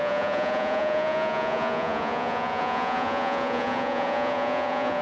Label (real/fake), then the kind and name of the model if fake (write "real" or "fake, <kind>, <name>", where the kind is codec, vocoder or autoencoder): fake, vocoder, Vocos